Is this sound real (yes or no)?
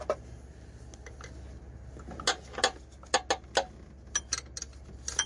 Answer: yes